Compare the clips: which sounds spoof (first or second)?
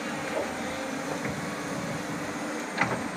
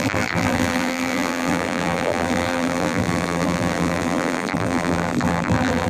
second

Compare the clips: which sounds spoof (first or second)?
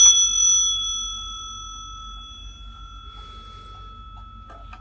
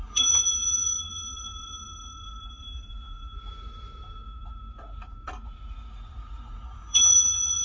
second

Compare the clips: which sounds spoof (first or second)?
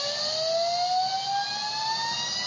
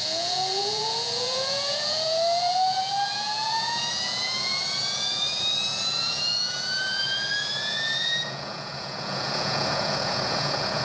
second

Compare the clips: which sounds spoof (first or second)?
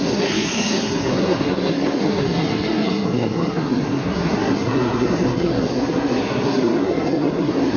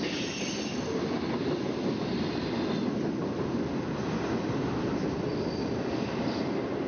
first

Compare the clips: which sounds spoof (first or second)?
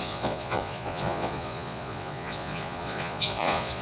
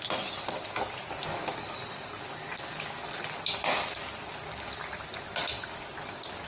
first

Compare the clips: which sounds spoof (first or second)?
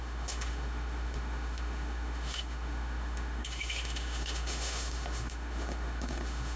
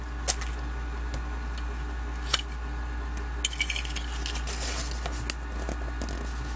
first